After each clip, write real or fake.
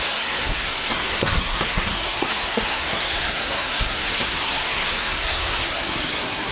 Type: fake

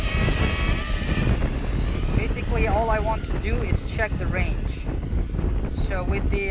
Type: real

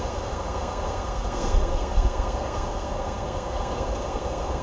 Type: fake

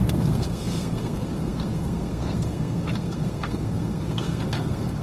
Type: fake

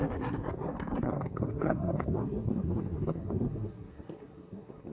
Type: fake